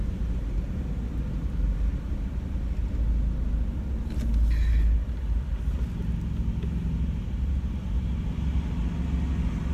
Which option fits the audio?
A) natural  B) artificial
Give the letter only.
A